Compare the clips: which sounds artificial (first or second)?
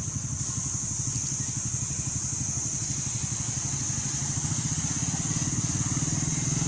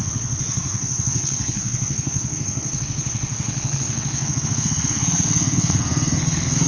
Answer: second